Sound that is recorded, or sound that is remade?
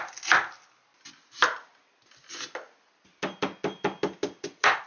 recorded